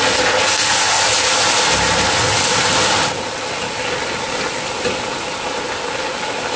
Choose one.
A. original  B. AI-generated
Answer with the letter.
A